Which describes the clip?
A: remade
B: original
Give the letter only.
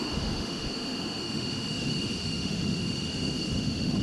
A